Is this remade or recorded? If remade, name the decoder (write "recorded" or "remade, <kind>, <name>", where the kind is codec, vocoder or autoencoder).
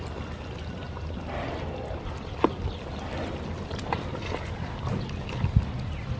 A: recorded